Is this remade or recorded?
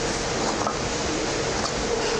recorded